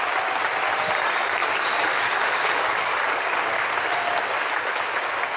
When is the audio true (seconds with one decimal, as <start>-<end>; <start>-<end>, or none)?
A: 0.0-1.4; 3.7-5.4